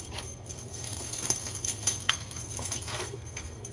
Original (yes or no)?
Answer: no